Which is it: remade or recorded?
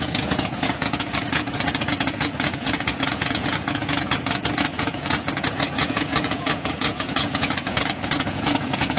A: remade